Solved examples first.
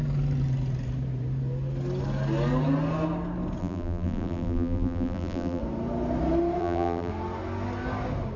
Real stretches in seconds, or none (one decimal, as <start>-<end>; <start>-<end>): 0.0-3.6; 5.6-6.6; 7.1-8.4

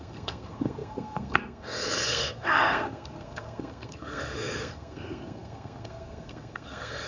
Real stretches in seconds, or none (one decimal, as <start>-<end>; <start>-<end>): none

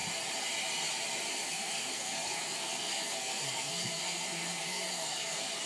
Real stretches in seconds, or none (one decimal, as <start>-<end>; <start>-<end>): 0.0-1.3